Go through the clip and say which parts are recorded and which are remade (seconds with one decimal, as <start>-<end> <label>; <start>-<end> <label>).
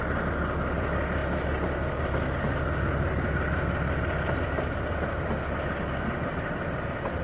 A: 0.0-7.2 recorded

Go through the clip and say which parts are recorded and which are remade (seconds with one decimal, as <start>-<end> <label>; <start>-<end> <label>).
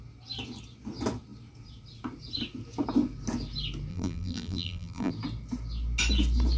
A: 0.0-3.9 recorded; 3.9-5.1 remade; 5.1-6.6 recorded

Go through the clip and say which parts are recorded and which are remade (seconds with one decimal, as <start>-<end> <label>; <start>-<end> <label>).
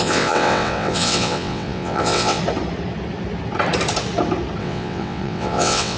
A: 0.0-2.4 remade; 2.4-4.6 recorded; 4.6-6.0 remade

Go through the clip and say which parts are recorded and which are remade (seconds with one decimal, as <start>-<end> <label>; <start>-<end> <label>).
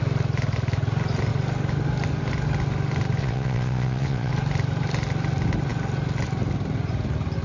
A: 0.0-3.2 recorded; 3.2-4.3 remade; 4.3-7.4 recorded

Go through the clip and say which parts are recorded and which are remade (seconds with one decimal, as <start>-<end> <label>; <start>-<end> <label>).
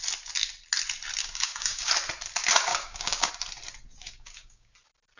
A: 0.0-1.2 recorded; 1.2-1.9 remade; 1.9-2.7 recorded; 2.7-3.3 remade; 3.3-4.0 recorded; 4.0-4.7 remade; 4.7-5.2 recorded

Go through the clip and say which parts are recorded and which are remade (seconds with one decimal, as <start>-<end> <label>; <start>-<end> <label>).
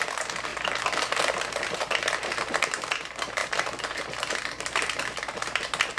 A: 0.0-6.0 remade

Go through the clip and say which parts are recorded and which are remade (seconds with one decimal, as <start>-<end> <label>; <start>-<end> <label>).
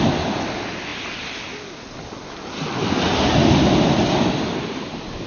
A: 0.0-5.3 recorded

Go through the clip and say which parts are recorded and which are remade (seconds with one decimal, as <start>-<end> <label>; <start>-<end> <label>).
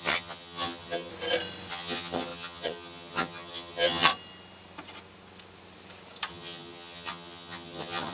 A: 0.0-1.1 remade; 1.1-1.7 recorded; 1.7-4.1 remade; 4.1-6.3 recorded; 6.3-8.1 remade